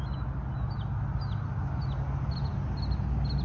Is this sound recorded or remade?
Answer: recorded